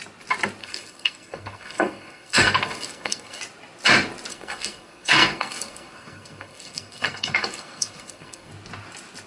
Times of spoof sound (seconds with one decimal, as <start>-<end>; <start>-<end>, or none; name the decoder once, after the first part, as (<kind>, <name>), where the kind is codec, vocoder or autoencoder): 0.6-3.4 (codec, SNAC); 4.3-8.5